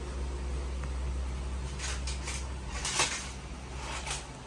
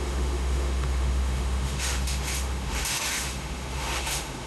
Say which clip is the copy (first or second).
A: second